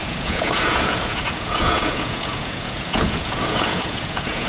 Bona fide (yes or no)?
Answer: no